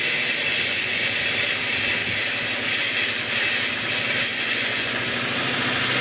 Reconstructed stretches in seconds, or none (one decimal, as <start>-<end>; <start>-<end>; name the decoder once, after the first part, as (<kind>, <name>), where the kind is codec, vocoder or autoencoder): 0.5-1.1 (vocoder, Vocos); 4.3-5.0